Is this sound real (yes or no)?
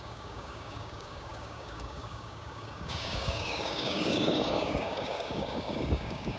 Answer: no